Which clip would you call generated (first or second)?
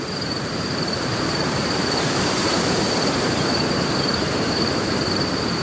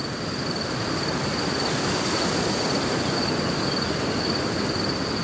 first